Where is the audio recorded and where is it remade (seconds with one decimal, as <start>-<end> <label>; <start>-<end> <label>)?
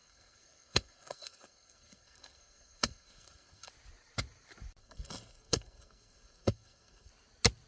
0.0-3.7 remade; 3.7-4.8 recorded; 4.8-7.1 remade; 7.1-7.7 recorded